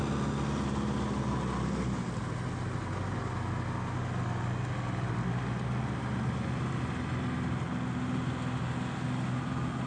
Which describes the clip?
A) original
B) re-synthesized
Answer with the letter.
A